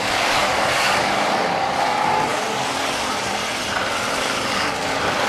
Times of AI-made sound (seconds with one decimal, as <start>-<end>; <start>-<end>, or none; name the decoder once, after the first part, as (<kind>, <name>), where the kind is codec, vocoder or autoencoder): 0.0-3.4 (codec, DAC); 4.1-5.3